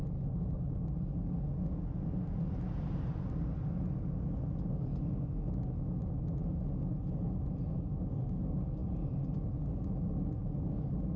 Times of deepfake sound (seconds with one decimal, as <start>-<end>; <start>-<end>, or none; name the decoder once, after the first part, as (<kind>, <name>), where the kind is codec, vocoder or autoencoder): none